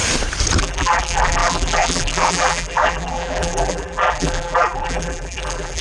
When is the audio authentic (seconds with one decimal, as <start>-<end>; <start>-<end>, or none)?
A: 0.0-0.6